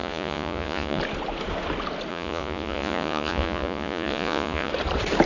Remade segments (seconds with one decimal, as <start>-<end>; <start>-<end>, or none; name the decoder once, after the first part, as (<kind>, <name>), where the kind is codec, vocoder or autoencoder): 0.0-1.0 (vocoder, Vocos); 2.1-4.7